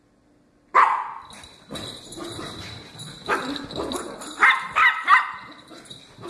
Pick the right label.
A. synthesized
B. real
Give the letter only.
A